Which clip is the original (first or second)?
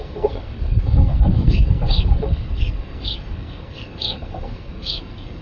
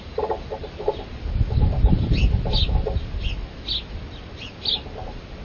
second